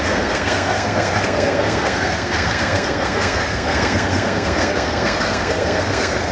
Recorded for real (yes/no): no